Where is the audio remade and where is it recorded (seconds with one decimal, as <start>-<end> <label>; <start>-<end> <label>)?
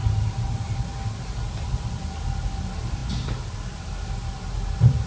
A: 0.0-5.1 recorded